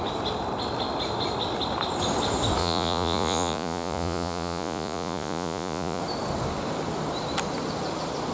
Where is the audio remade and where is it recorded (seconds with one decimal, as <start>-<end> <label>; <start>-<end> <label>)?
0.0-2.6 recorded; 2.6-6.0 remade; 6.0-8.3 recorded